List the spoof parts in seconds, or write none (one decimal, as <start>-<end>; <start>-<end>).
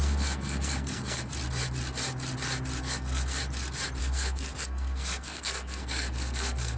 0.0-1.3; 2.8-3.4; 4.0-6.8